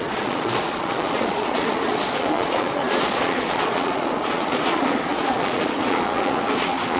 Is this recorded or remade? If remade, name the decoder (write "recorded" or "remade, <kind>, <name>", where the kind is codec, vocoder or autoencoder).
remade, vocoder, Vocos